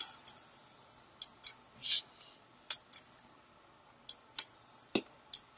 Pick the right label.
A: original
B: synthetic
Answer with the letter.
A